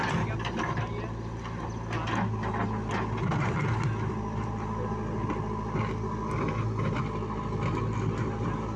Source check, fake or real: real